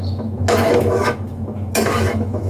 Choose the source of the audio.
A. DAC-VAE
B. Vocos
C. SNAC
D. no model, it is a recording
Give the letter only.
A